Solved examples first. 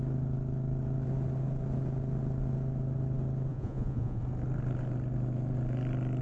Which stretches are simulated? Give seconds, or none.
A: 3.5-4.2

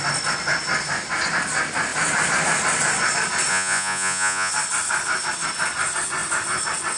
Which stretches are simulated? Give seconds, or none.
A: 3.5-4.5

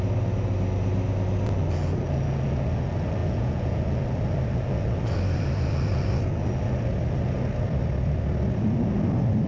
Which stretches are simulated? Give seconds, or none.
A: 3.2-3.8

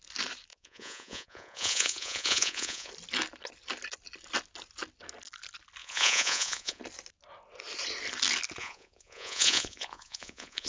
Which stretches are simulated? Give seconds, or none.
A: 0.5-2.9; 5.8-6.8; 8.6-10.7

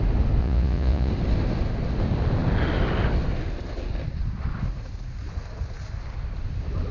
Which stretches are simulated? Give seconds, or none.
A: 0.4-1.1

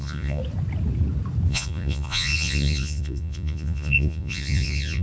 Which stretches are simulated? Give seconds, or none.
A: 0.0-0.4; 1.5-5.0